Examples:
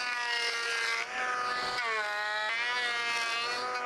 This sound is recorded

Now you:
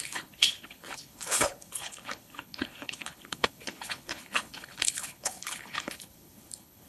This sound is remade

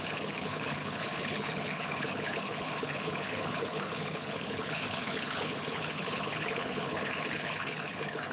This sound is remade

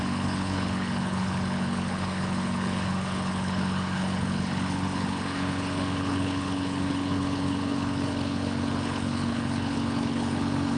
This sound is remade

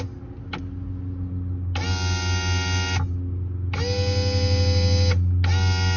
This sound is recorded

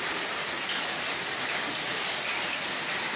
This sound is recorded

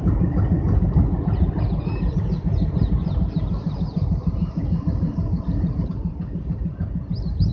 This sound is recorded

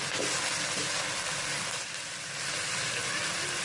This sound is recorded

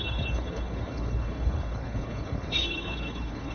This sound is remade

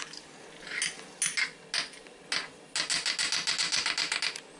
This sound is recorded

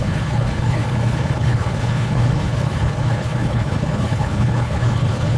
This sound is remade